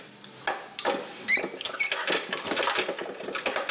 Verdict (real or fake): real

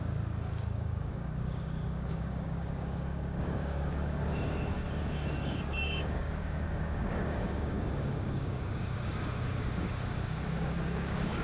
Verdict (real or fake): fake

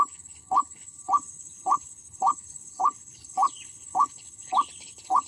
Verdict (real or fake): fake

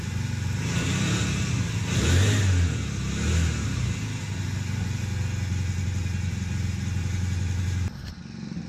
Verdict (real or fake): real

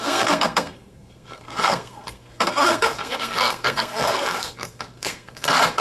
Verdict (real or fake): fake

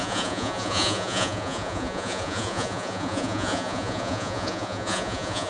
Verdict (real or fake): fake